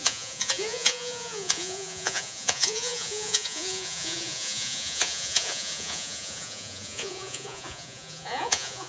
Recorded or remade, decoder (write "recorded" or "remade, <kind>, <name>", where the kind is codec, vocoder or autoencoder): remade, vocoder, Vocos